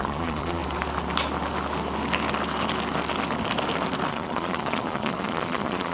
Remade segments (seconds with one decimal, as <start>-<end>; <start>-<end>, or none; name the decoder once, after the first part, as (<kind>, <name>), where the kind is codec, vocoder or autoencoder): 0.0-0.6 (vocoder, Vocos); 4.1-5.9